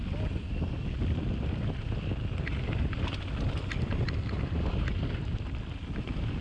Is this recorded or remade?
recorded